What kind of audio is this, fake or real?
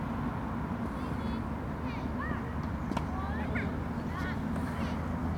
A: real